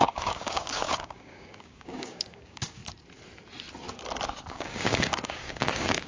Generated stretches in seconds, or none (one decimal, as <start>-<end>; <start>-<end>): 0.0-2.8; 4.4-6.1